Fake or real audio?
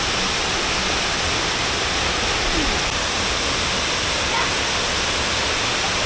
real